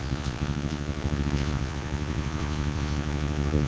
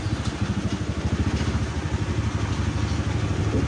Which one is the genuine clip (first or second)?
second